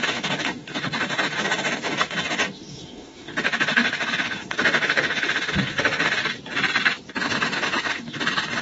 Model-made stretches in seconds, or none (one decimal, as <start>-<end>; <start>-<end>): 0.0-6.2; 7.2-8.6